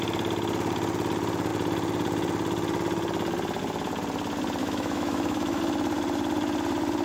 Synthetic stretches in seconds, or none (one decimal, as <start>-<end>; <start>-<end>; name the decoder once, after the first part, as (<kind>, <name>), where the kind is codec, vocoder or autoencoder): 4.6-5.6 (autoencoder, DAC-VAE)